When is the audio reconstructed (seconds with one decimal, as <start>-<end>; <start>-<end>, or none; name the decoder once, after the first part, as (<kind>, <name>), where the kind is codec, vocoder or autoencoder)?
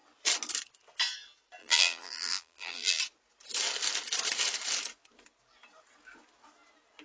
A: 1.6-3.0 (vocoder, BigVGAN v2)